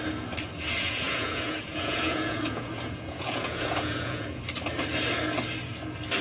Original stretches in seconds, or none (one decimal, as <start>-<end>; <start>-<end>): 0.0-0.8; 4.4-6.2